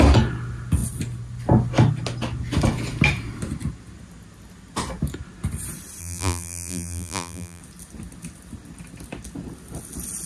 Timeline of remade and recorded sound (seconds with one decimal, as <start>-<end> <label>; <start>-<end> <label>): 0.0-6.0 recorded; 6.0-7.6 remade; 7.6-10.3 recorded